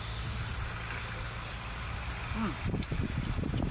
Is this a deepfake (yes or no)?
no